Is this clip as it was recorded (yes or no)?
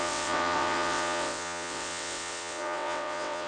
no